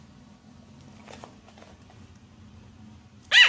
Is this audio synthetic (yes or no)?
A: no